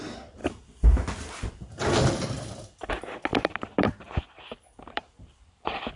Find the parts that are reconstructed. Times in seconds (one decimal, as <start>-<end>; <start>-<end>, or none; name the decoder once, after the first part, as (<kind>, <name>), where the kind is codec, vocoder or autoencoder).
0.4-2.9 (vocoder, BigVGAN v2); 3.3-6.0